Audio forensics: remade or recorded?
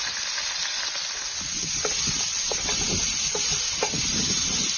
recorded